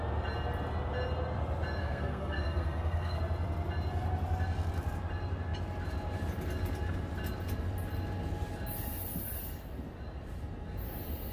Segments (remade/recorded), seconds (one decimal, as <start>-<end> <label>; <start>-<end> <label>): 0.0-1.8 recorded; 1.8-3.2 remade; 3.2-11.3 recorded